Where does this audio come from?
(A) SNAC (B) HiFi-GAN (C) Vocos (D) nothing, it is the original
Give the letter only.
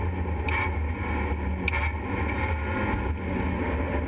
D